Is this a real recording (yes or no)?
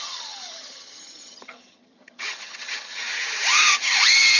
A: no